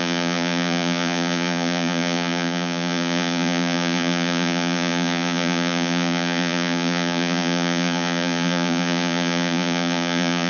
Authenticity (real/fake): fake